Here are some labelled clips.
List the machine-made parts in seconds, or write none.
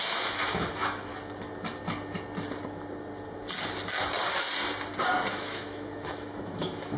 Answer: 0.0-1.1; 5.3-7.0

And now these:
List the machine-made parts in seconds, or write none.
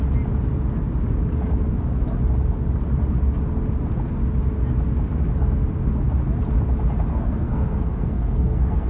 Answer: 7.1-8.9